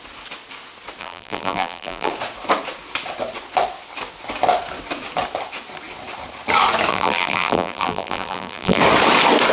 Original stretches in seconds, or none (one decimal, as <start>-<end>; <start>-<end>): 0.0-1.0; 2.1-6.9; 8.8-9.5